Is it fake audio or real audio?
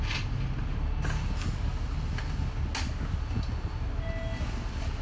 real